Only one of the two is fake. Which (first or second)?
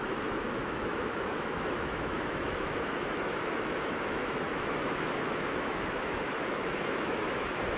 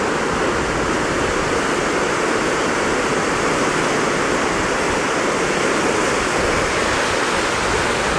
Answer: first